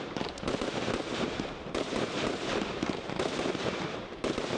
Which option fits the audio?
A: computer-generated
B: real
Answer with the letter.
A